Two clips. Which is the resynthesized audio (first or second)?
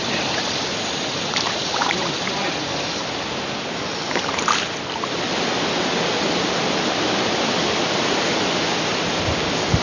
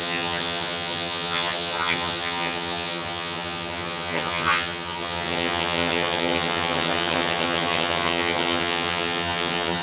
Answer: second